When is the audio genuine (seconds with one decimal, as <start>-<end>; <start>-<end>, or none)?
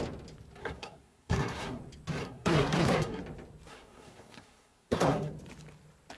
0.0-0.6; 1.8-2.2; 3.2-3.7; 5.3-6.2